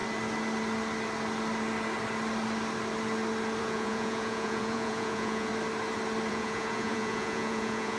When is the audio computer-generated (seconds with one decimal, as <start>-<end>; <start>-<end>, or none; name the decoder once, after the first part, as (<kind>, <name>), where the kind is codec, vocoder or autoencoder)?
3.6-5.5 (vocoder, Vocos); 6.3-8.0